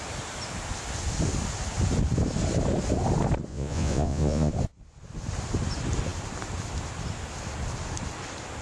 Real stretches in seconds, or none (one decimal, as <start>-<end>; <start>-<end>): 0.0-3.5; 4.5-8.6